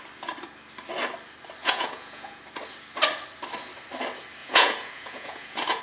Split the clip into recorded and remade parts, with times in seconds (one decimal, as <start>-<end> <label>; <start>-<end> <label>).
0.0-1.6 recorded; 1.6-2.4 remade; 2.4-4.4 recorded; 4.4-5.8 remade